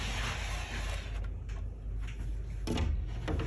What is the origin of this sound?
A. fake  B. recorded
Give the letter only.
B